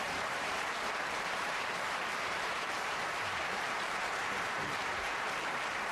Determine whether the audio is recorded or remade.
remade